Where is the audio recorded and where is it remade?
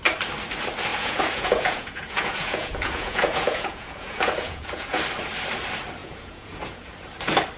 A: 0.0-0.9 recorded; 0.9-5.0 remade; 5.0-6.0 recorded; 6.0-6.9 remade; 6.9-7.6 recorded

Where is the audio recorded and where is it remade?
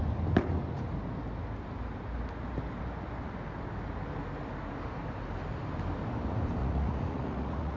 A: 0.0-6.6 recorded; 6.6-7.8 remade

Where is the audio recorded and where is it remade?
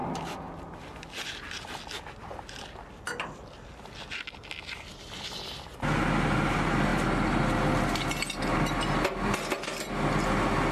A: 0.0-10.7 recorded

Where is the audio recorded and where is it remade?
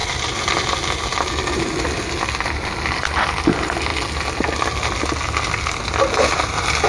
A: 0.0-6.9 recorded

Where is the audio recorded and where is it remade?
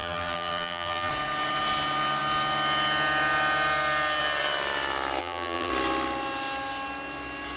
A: 0.0-1.1 remade; 1.1-5.2 recorded; 5.2-5.7 remade; 5.7-7.6 recorded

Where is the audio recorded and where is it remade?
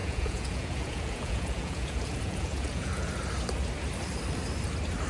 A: 0.0-3.1 remade; 3.1-5.1 recorded